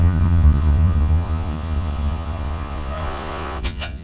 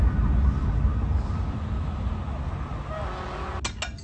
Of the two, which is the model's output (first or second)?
first